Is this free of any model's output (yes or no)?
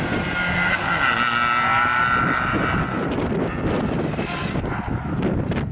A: yes